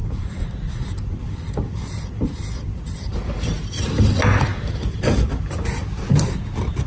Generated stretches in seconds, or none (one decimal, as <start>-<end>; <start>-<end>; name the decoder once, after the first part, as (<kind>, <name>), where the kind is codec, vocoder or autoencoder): 0.0-4.1 (vocoder, BigVGAN v2); 4.5-5.6